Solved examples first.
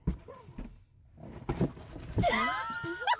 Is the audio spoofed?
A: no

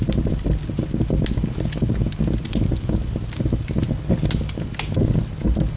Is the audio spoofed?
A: no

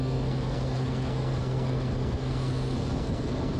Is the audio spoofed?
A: yes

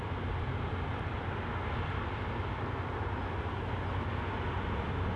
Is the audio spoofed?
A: no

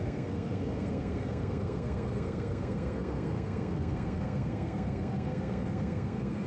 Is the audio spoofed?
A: yes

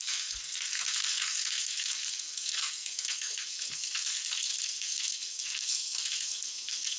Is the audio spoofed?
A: yes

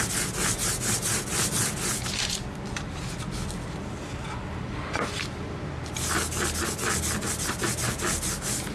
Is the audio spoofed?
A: no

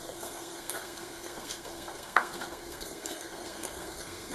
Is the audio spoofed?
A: yes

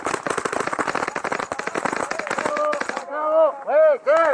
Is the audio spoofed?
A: no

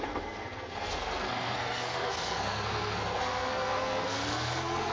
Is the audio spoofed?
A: yes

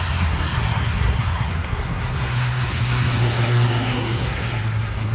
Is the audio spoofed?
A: yes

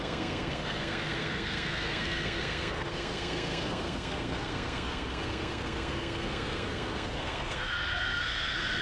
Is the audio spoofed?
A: yes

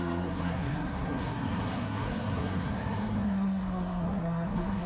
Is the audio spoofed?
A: yes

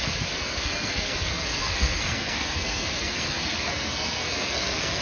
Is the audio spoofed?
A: yes